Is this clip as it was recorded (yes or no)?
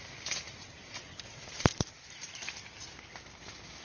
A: no